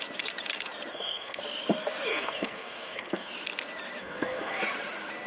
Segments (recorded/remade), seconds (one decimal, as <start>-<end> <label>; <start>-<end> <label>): 0.0-0.9 recorded; 0.9-1.4 remade; 1.4-2.1 recorded; 2.1-3.3 remade; 3.3-4.0 recorded; 4.0-4.6 remade; 4.6-5.3 recorded